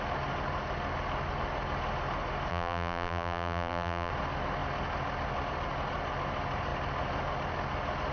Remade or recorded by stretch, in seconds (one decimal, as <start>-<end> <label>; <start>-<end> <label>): 0.0-2.5 recorded; 2.5-4.1 remade; 4.1-8.1 recorded